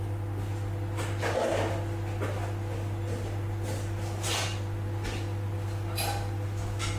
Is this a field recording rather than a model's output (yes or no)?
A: yes